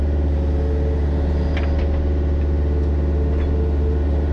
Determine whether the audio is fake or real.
real